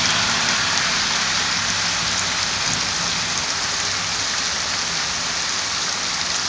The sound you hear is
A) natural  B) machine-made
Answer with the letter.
A